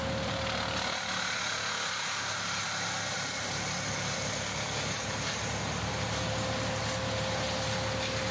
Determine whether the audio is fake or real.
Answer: real